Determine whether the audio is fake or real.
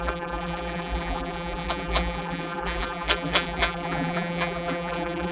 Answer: fake